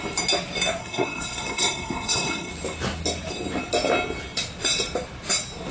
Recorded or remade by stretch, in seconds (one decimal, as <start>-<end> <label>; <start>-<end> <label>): 0.0-0.8 recorded; 0.8-2.5 remade; 2.5-5.7 recorded